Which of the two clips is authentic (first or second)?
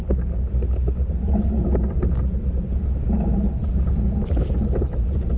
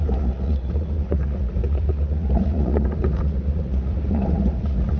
first